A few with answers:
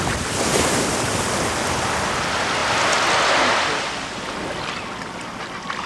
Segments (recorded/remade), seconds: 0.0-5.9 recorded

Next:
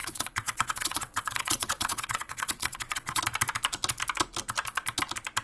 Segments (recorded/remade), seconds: 0.0-3.2 remade; 3.2-5.4 recorded